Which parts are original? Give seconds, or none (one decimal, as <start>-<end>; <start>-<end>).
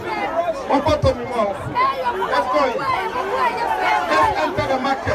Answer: 0.9-2.4